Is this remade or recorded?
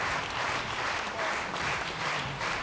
remade